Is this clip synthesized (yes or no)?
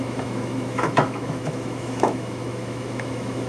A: yes